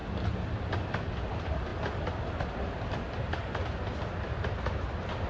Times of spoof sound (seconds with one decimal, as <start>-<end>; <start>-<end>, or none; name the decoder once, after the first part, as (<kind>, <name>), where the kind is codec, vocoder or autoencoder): 0.7-5.3 (vocoder, BigVGAN v2)